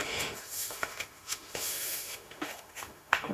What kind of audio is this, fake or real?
fake